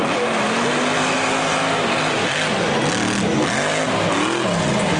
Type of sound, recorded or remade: recorded